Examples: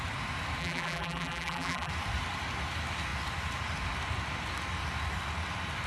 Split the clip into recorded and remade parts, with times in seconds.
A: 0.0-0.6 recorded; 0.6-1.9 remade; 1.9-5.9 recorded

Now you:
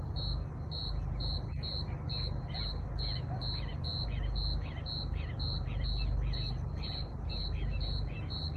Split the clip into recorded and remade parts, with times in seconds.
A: 0.0-8.6 recorded